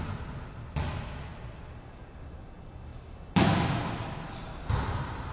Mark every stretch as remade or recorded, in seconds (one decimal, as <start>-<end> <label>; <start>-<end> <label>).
0.0-5.3 recorded